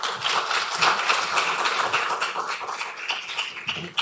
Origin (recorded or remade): recorded